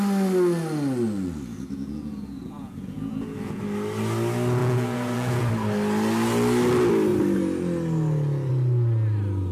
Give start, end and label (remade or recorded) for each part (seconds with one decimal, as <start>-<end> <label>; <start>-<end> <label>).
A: 0.0-1.5 recorded; 1.5-3.6 remade; 3.6-4.6 recorded; 4.6-5.5 remade; 5.5-9.5 recorded